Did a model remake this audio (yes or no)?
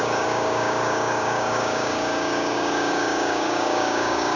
yes